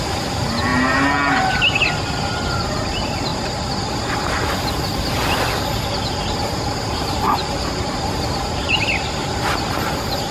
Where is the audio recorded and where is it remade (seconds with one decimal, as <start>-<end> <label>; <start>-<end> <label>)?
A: 0.0-10.3 recorded